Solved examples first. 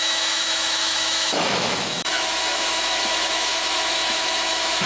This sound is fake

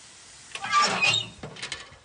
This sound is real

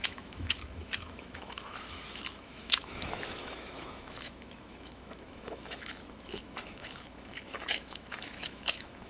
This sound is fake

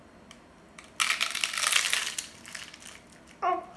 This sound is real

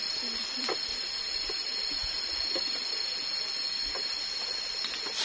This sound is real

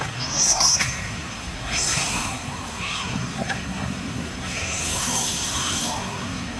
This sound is fake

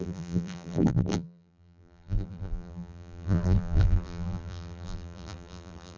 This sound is fake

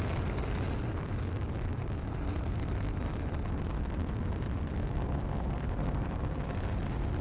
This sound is fake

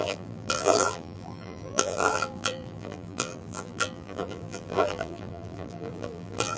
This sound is fake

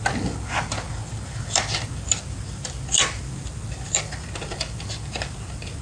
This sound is real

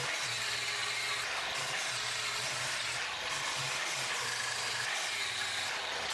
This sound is real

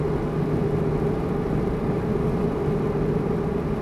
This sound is real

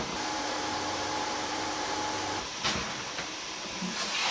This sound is fake